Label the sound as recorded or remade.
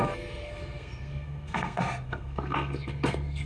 remade